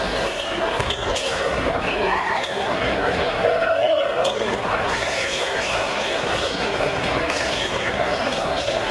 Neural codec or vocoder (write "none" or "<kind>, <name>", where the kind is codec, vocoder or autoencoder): codec, SNAC